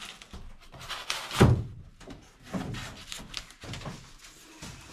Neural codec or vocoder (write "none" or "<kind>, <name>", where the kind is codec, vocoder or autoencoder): none